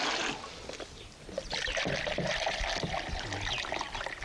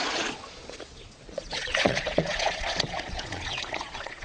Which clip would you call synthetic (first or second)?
second